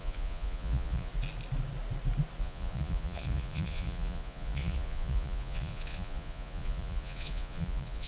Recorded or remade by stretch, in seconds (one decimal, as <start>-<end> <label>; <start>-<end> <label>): 0.0-1.1 remade; 1.1-2.4 recorded; 2.4-8.1 remade